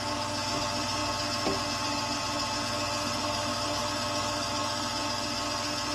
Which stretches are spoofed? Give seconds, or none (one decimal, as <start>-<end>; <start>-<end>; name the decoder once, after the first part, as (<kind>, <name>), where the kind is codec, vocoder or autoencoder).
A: 3.2-3.8 (autoencoder, DAC-VAE)